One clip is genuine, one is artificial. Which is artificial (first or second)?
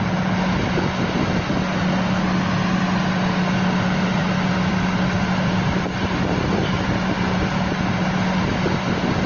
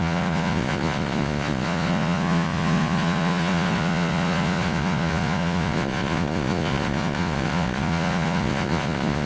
second